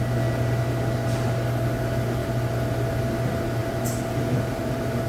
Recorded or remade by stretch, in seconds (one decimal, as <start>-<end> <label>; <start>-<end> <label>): 0.0-5.1 recorded